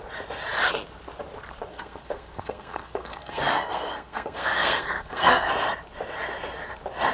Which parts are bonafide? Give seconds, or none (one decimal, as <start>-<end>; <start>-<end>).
0.0-1.7; 5.5-7.1